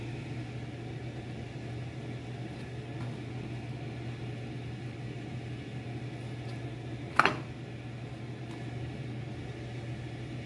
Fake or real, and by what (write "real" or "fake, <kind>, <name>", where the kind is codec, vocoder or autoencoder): real